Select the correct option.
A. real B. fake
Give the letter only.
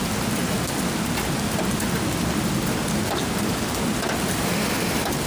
A